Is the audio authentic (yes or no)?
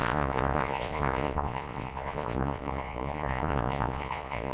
no